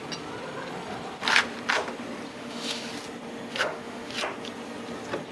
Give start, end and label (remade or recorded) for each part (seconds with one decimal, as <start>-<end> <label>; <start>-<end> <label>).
0.0-2.3 recorded; 2.3-2.9 remade; 2.9-3.5 recorded; 3.5-4.1 remade; 4.1-5.3 recorded